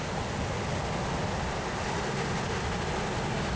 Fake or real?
real